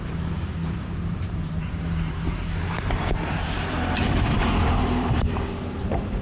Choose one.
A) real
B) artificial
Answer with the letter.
B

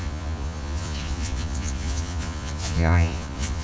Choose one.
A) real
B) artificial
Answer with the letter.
B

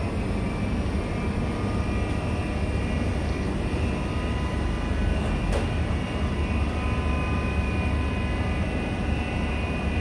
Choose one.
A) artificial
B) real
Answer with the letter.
B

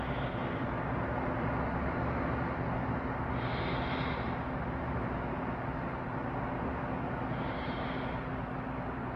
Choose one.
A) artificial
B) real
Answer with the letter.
B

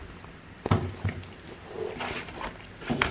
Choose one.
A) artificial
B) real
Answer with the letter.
A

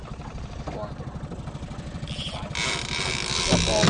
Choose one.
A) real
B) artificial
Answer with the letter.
A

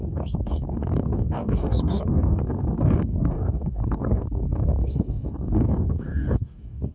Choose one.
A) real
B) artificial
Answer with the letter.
B